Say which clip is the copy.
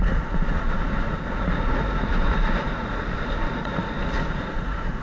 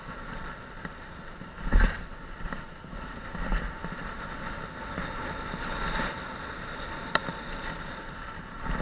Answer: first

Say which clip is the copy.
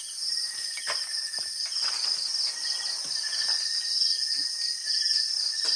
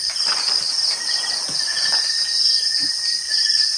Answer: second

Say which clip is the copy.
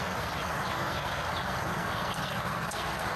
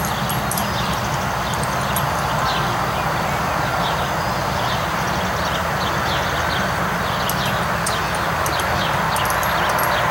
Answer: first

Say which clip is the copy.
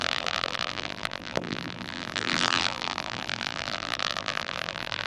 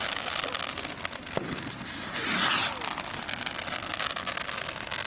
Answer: first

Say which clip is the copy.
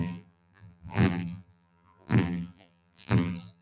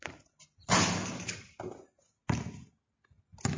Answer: first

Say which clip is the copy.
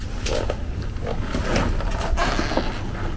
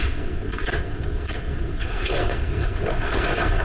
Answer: second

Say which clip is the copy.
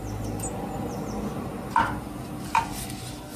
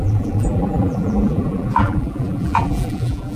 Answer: second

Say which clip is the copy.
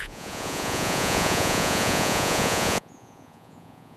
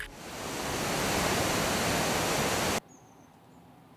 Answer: first